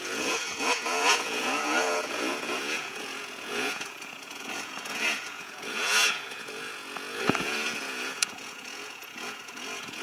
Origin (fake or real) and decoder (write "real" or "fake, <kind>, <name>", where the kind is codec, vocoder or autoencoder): fake, vocoder, Vocos